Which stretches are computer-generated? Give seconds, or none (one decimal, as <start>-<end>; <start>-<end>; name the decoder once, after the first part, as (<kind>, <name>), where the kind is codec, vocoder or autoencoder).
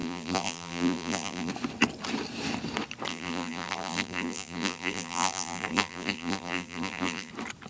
0.0-1.5 (vocoder, BigVGAN v2); 3.1-7.3